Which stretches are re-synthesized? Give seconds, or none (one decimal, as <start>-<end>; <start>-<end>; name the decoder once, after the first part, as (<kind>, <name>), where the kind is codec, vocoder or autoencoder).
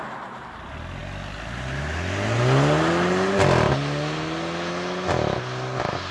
none